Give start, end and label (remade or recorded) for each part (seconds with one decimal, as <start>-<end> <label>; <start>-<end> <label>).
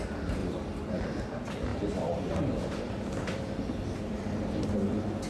0.0-0.4 recorded; 0.4-1.2 remade; 1.2-1.7 recorded; 1.7-4.6 remade; 4.6-5.3 recorded